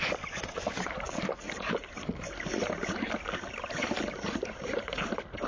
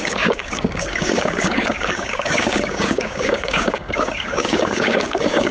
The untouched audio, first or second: first